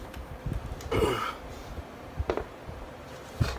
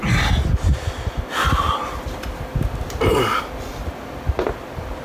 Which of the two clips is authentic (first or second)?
second